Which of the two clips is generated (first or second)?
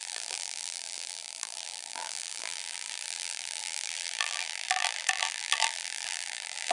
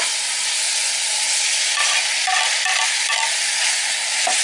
first